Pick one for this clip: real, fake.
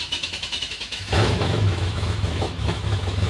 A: fake